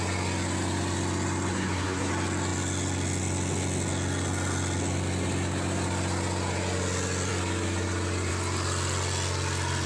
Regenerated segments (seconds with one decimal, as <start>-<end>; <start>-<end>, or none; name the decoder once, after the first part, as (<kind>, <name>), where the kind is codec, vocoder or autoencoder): 1.5-2.1 (codec, SNAC)